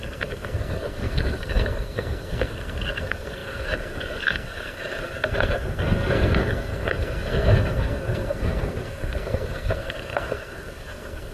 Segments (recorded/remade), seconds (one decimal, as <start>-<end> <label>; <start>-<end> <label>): 0.0-11.3 remade